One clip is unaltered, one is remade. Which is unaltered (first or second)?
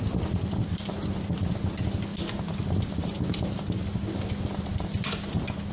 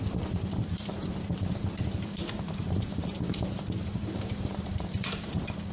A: first